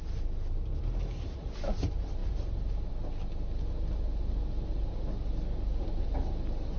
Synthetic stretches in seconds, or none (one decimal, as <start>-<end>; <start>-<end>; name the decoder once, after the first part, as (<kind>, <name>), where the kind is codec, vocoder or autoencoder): none